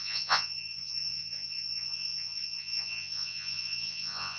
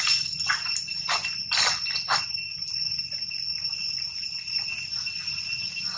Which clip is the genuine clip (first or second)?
second